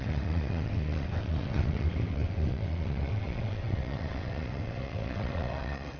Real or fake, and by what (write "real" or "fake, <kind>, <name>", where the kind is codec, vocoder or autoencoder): fake, vocoder, WaveNeXt